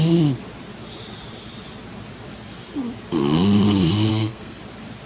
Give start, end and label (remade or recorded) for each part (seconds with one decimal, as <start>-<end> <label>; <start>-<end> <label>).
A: 0.0-4.1 recorded; 4.1-4.6 remade; 4.6-5.1 recorded